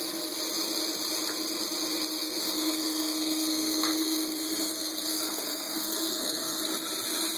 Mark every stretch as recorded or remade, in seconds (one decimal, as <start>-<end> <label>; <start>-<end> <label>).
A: 0.0-2.2 recorded; 2.2-6.6 remade; 6.6-7.4 recorded